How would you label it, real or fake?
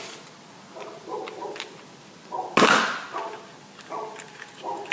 real